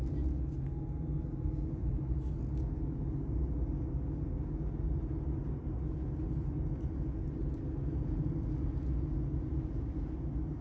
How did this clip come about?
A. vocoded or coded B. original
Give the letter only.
B